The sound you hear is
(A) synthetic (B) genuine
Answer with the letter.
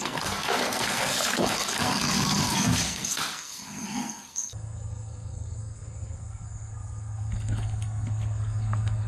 A